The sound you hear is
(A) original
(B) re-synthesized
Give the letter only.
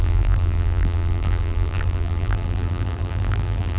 B